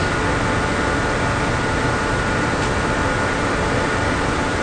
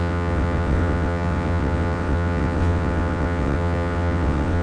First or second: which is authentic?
first